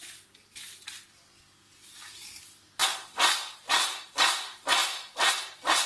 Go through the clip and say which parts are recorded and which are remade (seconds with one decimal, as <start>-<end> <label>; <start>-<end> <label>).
0.0-5.9 recorded

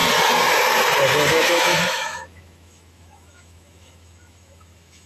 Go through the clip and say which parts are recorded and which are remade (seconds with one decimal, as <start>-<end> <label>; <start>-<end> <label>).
0.0-1.3 recorded; 1.3-5.1 remade